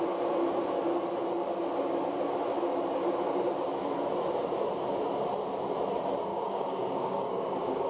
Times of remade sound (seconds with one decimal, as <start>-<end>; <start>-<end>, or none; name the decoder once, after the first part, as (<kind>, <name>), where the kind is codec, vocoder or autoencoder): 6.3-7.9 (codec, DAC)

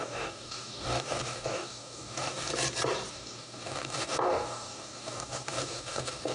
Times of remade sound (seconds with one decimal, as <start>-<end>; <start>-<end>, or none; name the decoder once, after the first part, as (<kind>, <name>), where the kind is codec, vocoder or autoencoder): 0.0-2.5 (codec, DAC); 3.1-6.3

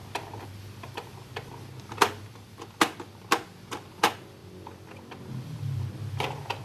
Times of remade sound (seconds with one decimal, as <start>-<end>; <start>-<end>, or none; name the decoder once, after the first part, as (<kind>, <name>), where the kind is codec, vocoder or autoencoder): none

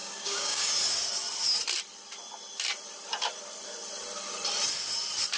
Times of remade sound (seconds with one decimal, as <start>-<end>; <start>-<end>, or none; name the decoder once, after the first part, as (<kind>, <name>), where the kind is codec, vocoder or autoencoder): 0.0-0.7 (codec, DAC)

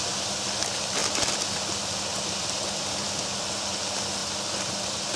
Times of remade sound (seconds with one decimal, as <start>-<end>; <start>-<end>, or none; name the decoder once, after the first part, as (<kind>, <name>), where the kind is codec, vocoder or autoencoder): none